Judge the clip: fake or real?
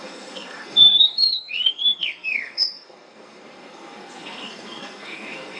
fake